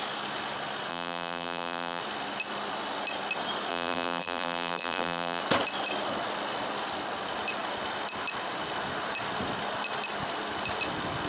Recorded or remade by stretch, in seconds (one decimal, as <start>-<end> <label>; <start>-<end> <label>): 0.0-0.9 recorded; 0.9-2.0 remade; 2.0-3.7 recorded; 3.7-5.4 remade; 5.4-11.3 recorded